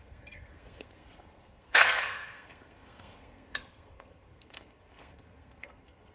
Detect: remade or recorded remade